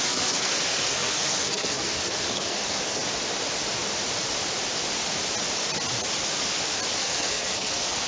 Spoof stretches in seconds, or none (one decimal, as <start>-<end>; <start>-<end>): 0.0-3.0; 7.0-8.1